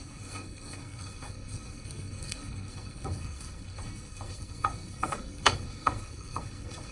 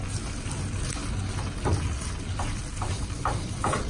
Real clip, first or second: second